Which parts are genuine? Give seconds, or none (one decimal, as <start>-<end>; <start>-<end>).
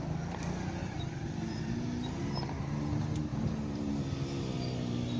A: 0.0-0.8; 1.6-3.3; 3.9-5.2